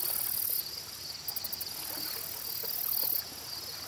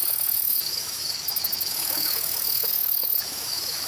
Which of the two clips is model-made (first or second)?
second